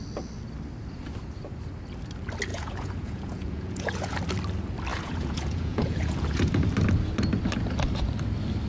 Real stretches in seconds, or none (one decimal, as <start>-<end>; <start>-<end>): 0.0-2.5; 4.2-4.9; 6.5-8.7